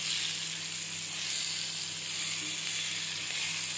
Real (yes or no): yes